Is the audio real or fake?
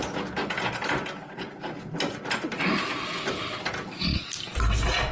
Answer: real